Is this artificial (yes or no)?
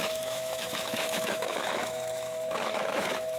yes